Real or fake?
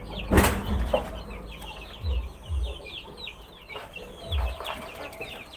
real